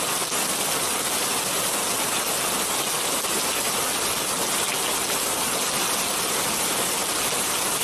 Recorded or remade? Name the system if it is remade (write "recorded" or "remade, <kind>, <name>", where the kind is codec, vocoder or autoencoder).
recorded